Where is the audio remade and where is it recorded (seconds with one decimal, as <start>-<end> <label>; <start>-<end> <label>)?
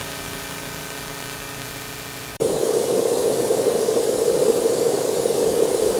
0.0-1.7 remade; 1.7-2.3 recorded; 2.3-6.0 remade